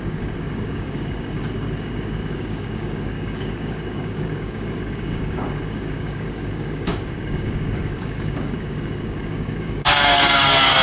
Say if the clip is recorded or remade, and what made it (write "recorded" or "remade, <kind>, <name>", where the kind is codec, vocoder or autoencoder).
remade, codec, DAC